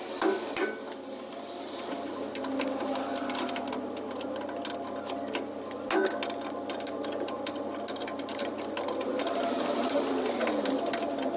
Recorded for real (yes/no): yes